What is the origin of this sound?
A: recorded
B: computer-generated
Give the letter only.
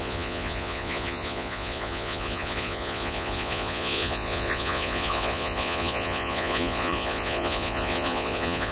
B